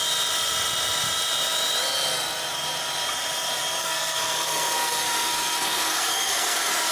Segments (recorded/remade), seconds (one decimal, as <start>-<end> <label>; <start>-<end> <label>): 0.0-3.8 recorded; 3.8-6.9 remade